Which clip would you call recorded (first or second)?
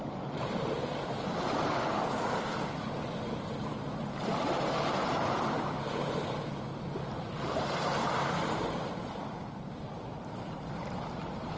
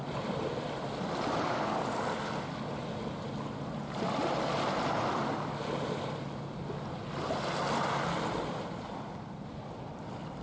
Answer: second